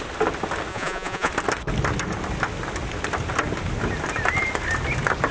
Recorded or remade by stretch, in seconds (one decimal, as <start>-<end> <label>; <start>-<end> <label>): 0.0-0.7 recorded; 0.7-1.3 remade; 1.3-5.3 recorded